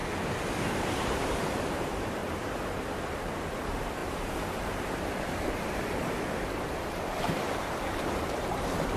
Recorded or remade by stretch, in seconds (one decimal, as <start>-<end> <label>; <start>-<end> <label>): 0.0-0.6 recorded; 0.6-2.2 remade; 2.2-3.0 recorded; 3.0-9.0 remade

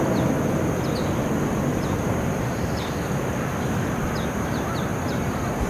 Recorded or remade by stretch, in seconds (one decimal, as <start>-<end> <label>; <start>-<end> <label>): 0.0-1.7 recorded; 1.7-2.8 remade; 2.8-4.9 recorded; 4.9-5.7 remade